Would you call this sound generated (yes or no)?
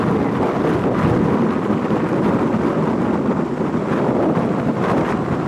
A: no